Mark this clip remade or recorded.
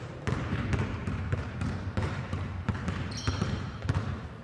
remade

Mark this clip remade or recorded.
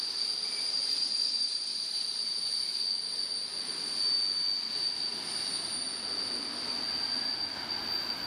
recorded